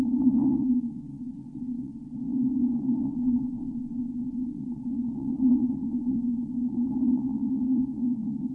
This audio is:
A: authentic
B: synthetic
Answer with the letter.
B